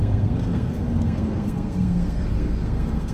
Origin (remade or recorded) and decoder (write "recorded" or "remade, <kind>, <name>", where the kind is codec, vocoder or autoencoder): remade, codec, SNAC